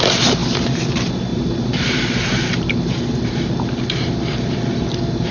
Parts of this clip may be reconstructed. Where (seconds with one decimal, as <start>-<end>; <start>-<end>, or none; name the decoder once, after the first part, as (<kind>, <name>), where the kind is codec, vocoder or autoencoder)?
none